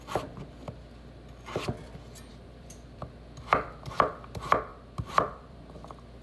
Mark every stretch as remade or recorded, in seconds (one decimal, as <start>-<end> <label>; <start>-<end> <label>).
0.0-2.3 recorded; 2.3-3.0 remade; 3.0-4.7 recorded; 4.7-5.6 remade; 5.6-6.2 recorded